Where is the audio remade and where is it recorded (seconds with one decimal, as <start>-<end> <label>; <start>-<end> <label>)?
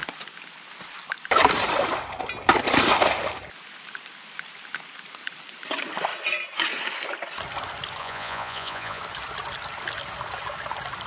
0.0-8.0 recorded; 8.0-9.0 remade; 9.0-11.1 recorded